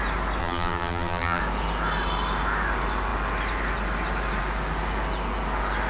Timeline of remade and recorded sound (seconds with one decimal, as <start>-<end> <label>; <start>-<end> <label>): 0.0-0.4 recorded; 0.4-1.4 remade; 1.4-5.9 recorded